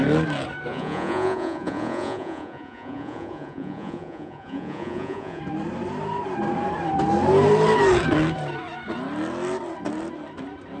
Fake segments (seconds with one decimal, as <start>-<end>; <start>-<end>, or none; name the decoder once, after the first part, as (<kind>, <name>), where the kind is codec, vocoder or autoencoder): 0.7-5.4 (vocoder, Vocos)